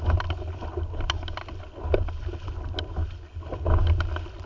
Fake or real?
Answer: real